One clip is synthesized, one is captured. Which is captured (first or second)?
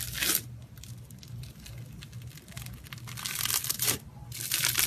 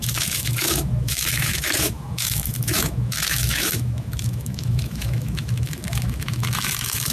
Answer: first